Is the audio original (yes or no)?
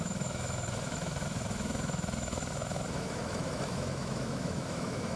no